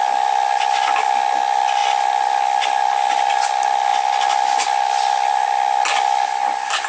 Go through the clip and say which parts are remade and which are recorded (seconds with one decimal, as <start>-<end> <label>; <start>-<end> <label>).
0.0-6.9 recorded